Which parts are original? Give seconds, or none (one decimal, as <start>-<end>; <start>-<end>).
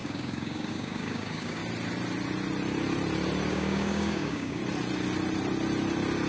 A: 1.6-3.5; 4.6-6.3